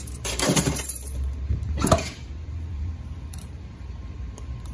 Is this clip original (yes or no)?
no